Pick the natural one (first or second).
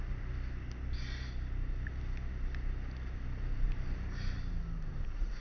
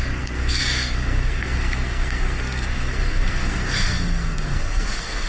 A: first